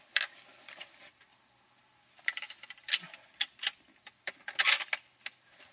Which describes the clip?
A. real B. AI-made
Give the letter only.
A